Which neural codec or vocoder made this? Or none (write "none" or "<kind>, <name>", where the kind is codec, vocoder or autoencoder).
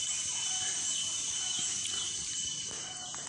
none